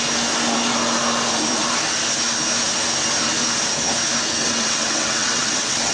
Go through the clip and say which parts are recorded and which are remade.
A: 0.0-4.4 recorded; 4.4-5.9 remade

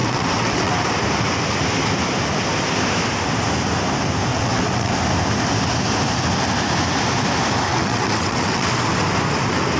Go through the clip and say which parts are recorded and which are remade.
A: 0.0-0.7 remade; 0.7-4.3 recorded; 4.3-4.9 remade; 4.9-7.7 recorded; 7.7-8.7 remade; 8.7-9.8 recorded